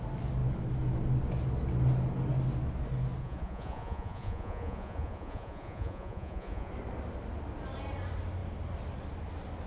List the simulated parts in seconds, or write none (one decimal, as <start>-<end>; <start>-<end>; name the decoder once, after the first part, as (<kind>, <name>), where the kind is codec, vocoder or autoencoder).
3.2-6.7 (vocoder, Vocos)